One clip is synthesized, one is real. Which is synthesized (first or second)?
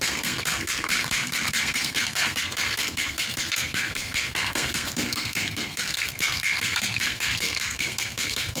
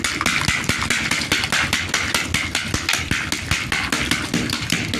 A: first